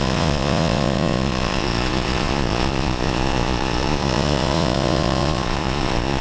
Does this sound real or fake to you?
fake